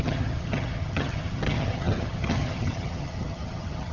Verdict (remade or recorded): remade